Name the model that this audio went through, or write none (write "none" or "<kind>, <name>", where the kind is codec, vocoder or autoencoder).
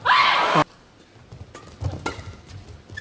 none